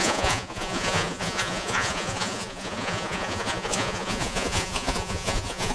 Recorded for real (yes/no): no